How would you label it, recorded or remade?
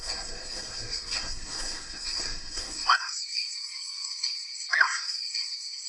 remade